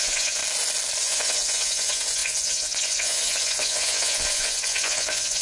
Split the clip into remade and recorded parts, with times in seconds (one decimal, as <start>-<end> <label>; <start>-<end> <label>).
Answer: 0.0-0.4 remade; 0.4-1.0 recorded; 1.0-5.4 remade